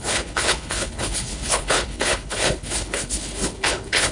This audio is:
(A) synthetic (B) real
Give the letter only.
A